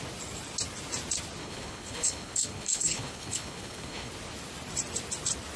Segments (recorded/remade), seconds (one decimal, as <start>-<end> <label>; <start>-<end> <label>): 0.0-1.4 recorded; 1.4-4.1 remade; 4.1-5.6 recorded